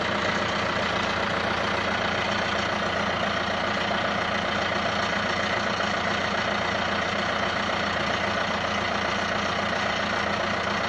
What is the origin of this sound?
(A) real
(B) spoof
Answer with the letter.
A